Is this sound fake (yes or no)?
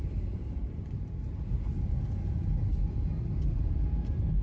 no